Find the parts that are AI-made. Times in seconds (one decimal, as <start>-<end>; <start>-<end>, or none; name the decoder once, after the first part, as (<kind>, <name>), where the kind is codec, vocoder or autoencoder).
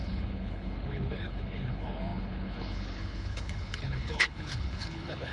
0.0-5.3 (codec, HILCodec)